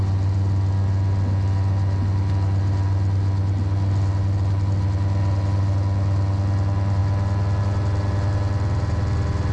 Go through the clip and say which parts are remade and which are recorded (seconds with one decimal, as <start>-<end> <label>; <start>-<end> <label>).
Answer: 0.0-9.5 recorded